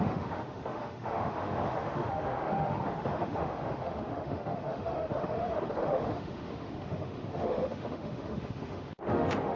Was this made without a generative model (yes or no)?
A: no